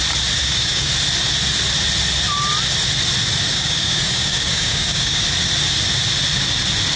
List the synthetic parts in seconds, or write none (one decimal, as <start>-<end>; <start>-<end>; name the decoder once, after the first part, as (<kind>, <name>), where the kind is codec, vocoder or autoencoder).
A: 0.4-0.9 (codec, DAC); 3.5-5.2